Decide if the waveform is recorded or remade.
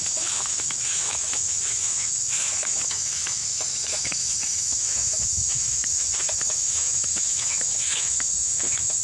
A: remade